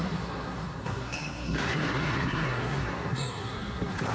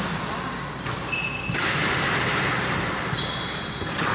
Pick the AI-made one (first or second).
first